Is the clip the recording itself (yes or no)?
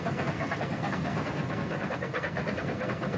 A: no